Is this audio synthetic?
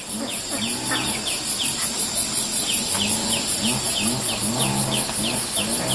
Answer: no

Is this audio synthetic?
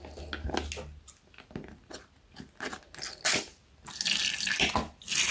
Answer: no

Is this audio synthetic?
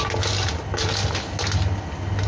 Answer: no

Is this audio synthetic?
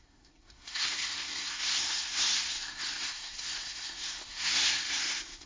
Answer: yes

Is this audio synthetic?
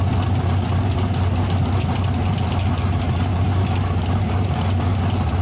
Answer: no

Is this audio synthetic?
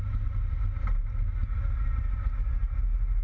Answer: no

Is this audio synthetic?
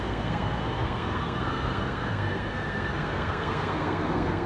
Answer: yes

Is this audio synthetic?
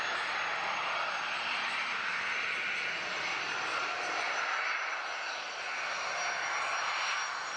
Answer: no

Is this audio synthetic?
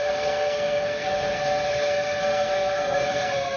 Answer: yes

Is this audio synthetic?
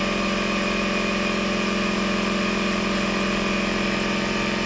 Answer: no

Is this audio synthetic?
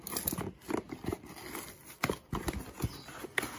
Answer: no